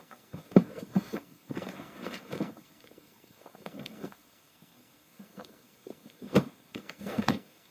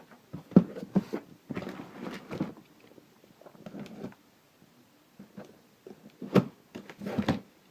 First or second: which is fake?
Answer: first